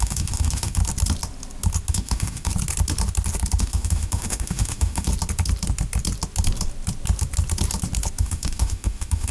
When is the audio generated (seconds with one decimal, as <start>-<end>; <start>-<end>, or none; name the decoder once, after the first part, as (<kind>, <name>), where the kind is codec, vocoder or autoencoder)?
0.0-0.8 (autoencoder, DAC-VAE); 1.9-2.5; 3.6-5.1; 8.2-9.3